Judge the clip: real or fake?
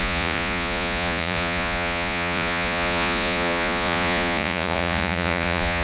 fake